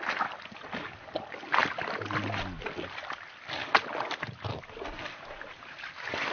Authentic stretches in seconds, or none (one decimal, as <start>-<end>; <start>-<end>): 0.0-6.3